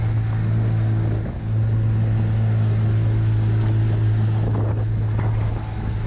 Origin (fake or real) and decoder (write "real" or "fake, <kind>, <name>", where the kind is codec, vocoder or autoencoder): real